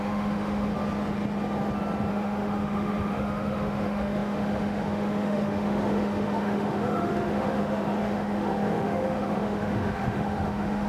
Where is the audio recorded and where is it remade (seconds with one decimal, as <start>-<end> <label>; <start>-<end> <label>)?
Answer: 0.0-0.7 remade; 0.7-2.1 recorded; 2.1-10.9 remade